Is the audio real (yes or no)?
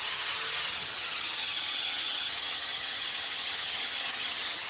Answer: no